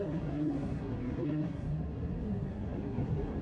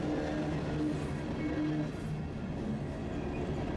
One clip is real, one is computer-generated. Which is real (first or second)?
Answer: second